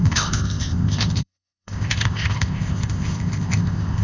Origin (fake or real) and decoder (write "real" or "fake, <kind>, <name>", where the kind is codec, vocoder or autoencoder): fake, codec, ZipCodec